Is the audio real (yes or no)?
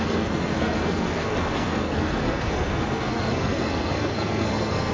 no